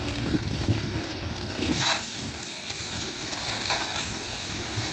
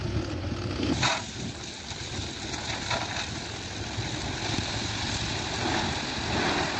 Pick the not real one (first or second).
first